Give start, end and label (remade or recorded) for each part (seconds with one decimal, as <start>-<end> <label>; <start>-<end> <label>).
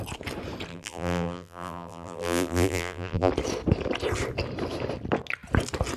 0.0-0.7 recorded; 0.7-3.3 remade; 3.3-6.0 recorded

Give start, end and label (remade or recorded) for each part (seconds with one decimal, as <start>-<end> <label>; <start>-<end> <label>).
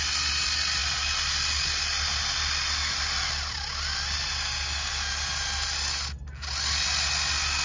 0.0-7.6 recorded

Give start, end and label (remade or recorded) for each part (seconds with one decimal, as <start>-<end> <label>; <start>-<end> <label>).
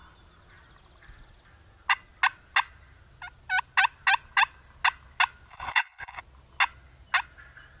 0.0-5.5 recorded; 5.5-6.2 remade; 6.2-7.8 recorded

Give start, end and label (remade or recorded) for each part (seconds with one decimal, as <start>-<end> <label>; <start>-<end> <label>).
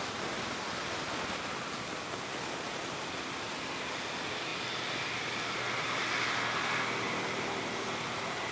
0.0-8.5 recorded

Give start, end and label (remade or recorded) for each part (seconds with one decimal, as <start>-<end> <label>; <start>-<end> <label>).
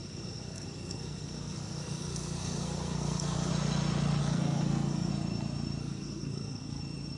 0.0-3.5 remade; 3.5-4.2 recorded; 4.2-5.1 remade; 5.1-5.8 recorded; 5.8-6.8 remade; 6.8-7.2 recorded